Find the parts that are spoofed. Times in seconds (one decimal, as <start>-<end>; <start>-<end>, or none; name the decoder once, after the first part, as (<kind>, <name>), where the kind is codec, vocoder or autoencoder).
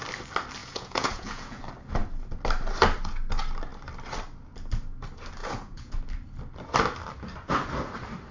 0.6-1.6 (vocoder, Vocos); 5.4-5.9